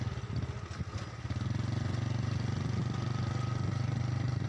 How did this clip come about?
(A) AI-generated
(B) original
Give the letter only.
B